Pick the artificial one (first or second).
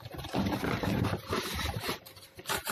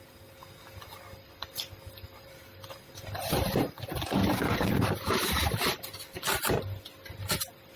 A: first